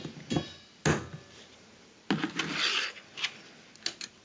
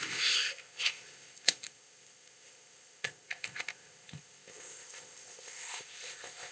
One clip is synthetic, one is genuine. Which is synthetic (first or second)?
second